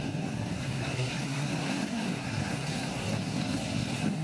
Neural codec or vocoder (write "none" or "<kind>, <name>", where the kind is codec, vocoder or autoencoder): codec, SNAC